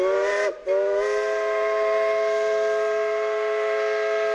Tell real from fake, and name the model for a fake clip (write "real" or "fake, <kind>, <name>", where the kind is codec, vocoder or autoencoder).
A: real